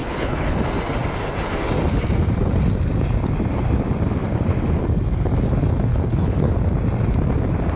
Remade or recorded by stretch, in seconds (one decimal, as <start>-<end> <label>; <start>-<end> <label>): 0.0-0.6 remade; 0.6-5.9 recorded; 5.9-6.5 remade; 6.5-7.8 recorded